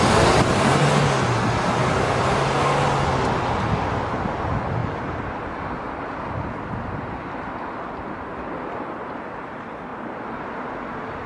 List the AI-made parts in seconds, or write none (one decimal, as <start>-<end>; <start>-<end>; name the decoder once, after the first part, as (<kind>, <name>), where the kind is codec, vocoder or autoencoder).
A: 4.8-6.9 (vocoder, BigVGAN v2)